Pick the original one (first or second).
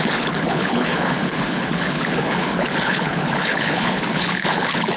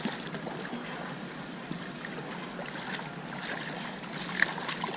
second